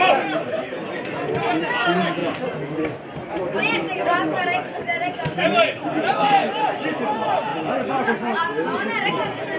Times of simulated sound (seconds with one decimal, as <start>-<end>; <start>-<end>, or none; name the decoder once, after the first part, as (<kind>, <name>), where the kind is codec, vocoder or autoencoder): 0.0-9.6 (vocoder, BigVGAN v2)